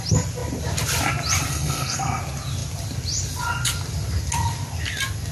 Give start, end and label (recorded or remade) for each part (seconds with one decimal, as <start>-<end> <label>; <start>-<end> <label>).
0.0-1.5 recorded; 1.5-2.2 remade; 2.2-5.3 recorded